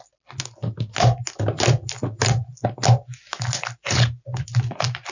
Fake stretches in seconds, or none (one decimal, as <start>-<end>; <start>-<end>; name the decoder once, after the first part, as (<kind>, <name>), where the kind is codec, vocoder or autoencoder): none